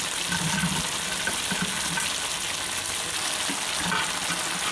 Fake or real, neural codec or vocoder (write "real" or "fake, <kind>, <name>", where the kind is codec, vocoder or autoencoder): real